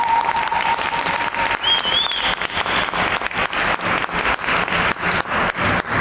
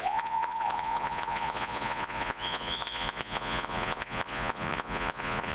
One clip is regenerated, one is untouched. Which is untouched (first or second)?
first